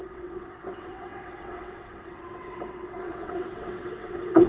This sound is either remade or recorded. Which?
remade